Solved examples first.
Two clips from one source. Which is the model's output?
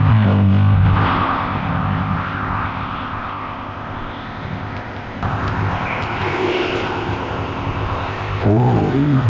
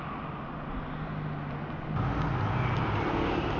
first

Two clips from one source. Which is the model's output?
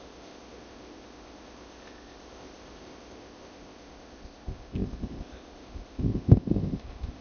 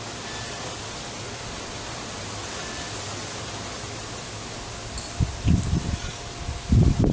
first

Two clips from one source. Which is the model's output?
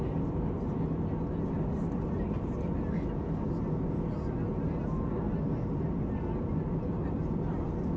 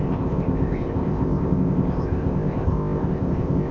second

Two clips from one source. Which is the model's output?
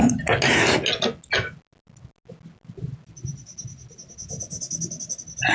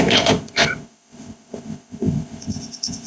second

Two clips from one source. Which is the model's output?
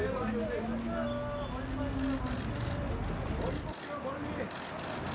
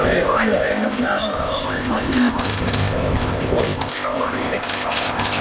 second